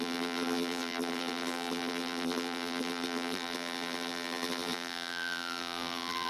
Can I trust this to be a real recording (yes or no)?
no